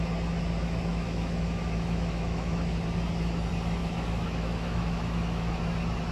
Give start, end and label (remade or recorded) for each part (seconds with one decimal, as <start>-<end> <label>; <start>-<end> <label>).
0.0-0.9 recorded; 0.9-2.8 remade; 2.8-3.8 recorded; 3.8-5.6 remade; 5.6-6.1 recorded